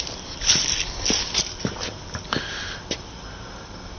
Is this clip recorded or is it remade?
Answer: recorded